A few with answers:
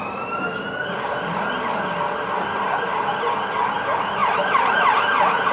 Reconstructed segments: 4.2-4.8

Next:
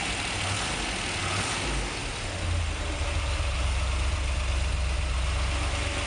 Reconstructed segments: none

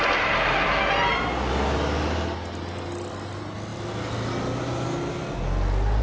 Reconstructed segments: none

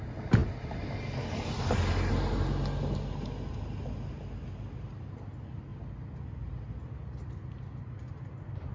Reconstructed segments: none

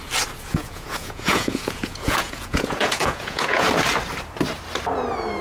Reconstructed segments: 0.5-3.7